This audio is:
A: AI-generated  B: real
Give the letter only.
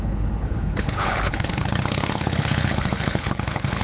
A